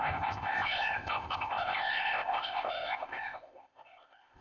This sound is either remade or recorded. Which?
remade